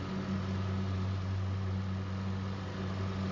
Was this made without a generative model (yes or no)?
yes